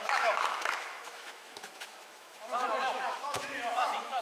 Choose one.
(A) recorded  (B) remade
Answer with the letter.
B